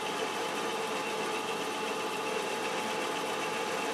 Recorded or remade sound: recorded